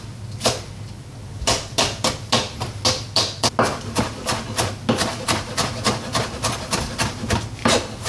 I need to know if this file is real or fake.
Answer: real